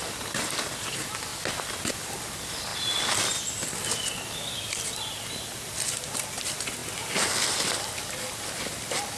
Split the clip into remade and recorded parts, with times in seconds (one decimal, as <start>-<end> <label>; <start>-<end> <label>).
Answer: 0.0-1.3 remade; 1.3-1.9 recorded; 1.9-2.7 remade; 2.7-3.4 recorded; 3.4-6.8 remade; 6.8-9.2 recorded

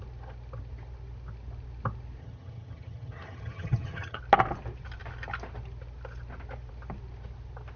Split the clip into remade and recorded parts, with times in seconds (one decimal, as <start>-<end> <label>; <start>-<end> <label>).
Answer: 0.0-2.2 recorded; 2.2-4.2 remade; 4.2-7.8 recorded

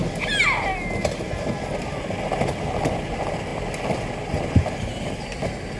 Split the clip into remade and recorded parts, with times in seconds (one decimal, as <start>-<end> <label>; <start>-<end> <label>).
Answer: 0.0-5.8 recorded

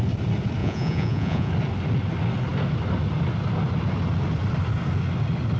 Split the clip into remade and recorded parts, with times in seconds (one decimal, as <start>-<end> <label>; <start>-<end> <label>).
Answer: 0.0-0.6 recorded; 0.6-1.5 remade; 1.5-5.6 recorded

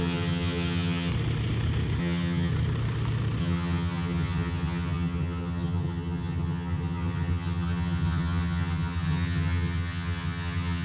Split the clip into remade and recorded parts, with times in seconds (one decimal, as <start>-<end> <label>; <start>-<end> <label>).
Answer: 0.0-1.1 remade; 1.1-2.0 recorded; 2.0-2.5 remade; 2.5-3.4 recorded; 3.4-10.8 remade

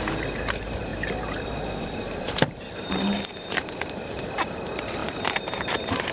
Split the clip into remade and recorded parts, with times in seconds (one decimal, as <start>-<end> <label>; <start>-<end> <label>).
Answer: 0.0-6.1 remade